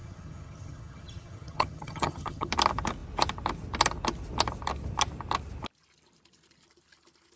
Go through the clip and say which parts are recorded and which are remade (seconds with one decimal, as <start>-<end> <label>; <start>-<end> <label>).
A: 0.0-2.5 remade; 2.5-7.4 recorded